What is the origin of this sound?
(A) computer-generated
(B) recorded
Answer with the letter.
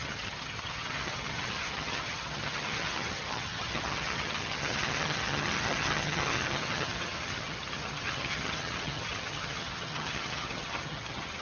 A